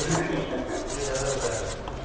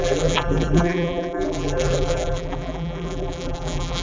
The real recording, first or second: first